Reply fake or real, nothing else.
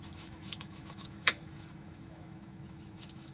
fake